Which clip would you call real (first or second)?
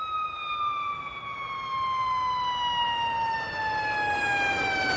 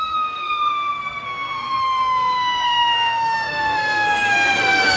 first